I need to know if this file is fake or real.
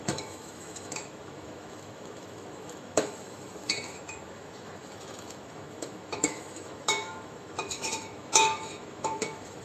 fake